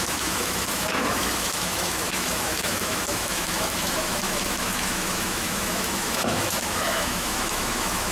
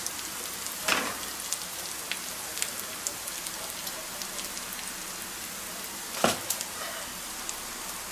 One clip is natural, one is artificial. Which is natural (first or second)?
second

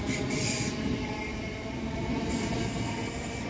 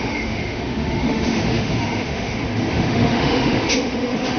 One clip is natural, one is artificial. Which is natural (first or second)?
first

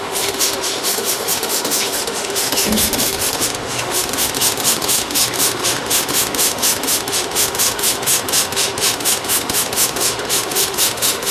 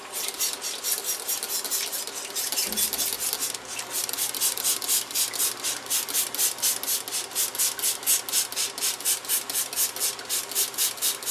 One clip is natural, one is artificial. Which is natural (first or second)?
second